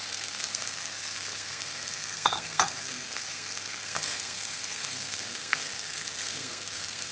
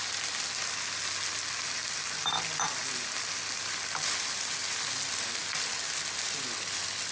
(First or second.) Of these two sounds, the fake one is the first